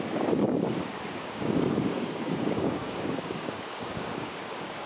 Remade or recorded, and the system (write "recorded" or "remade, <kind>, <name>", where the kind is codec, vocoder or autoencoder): remade, codec, DAC